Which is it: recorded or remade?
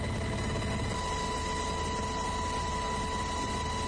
recorded